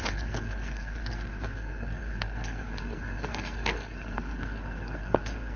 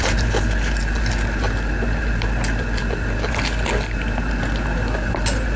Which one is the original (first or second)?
second